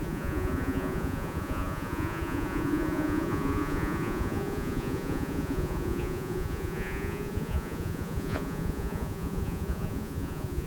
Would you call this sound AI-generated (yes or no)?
yes